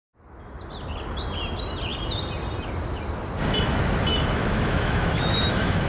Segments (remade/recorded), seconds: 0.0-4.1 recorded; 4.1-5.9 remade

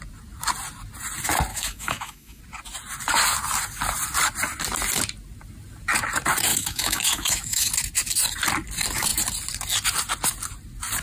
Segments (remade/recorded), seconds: 0.0-1.5 recorded; 1.5-2.4 remade; 2.4-6.5 recorded; 6.5-7.7 remade; 7.7-11.0 recorded